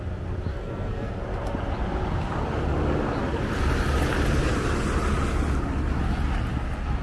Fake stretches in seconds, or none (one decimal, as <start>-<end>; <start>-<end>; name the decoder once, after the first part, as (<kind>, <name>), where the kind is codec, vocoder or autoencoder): 0.5-1.1 (codec, SNAC)